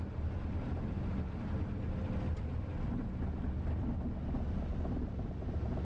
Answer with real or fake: real